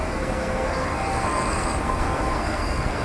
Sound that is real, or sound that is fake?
fake